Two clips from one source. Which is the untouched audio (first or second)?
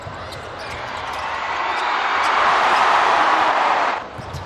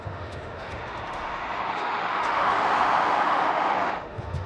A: first